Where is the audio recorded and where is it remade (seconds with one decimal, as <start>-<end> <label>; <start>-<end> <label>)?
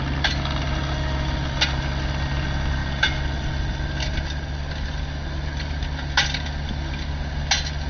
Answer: 0.0-7.9 recorded